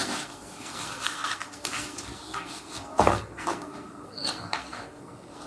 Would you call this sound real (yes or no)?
no